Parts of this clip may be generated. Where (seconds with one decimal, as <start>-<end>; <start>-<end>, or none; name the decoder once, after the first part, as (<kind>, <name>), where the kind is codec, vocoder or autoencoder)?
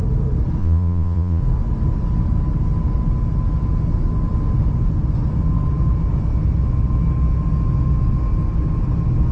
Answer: 0.6-1.4 (vocoder, Vocos)